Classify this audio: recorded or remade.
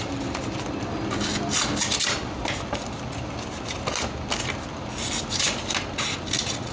recorded